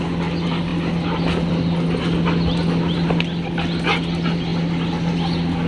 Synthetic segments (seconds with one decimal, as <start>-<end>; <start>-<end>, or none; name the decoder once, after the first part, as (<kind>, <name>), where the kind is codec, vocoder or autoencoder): none